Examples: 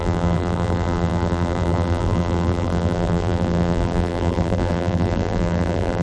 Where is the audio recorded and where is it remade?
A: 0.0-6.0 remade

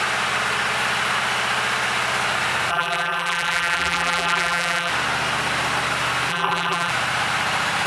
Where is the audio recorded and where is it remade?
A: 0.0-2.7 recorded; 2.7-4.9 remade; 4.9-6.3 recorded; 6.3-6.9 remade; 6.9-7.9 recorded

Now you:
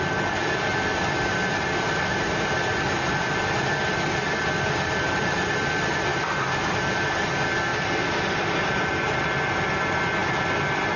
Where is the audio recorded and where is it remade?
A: 0.0-0.4 recorded; 0.4-4.4 remade; 4.4-10.2 recorded; 10.2-11.0 remade

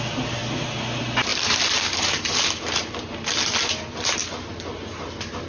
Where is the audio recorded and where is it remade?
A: 0.0-1.3 recorded; 1.3-2.9 remade; 2.9-5.5 recorded